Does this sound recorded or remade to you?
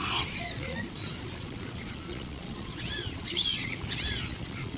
remade